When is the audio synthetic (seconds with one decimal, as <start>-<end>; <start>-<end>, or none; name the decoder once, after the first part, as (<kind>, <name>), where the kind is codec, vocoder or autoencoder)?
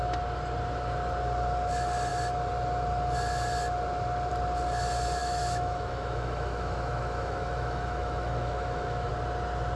5.2-9.1 (autoencoder, DAC-VAE)